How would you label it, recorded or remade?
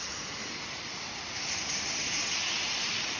recorded